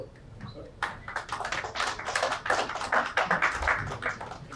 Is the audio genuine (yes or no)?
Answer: no